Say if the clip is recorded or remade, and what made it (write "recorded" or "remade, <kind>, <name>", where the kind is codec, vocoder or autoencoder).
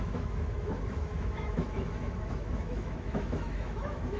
remade, autoencoder, DAC-VAE